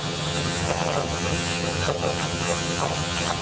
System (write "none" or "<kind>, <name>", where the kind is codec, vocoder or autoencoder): vocoder, HiFi-GAN